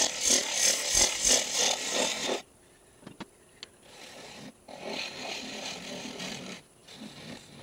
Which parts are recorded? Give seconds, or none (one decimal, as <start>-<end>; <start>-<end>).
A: 0.0-7.6